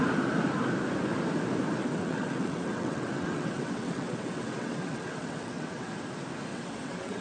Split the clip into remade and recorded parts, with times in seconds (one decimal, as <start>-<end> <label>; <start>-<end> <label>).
0.0-1.8 recorded; 1.8-5.9 remade; 5.9-6.5 recorded; 6.5-7.2 remade